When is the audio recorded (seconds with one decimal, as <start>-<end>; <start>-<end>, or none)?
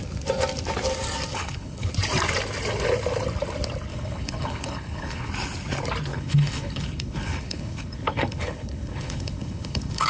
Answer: 0.0-1.3; 1.9-3.9; 5.3-6.1